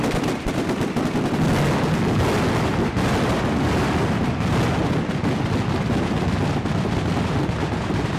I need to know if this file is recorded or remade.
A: recorded